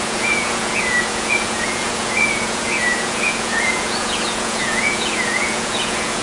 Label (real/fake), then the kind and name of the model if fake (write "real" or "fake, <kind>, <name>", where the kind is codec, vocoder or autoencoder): fake, vocoder, Vocos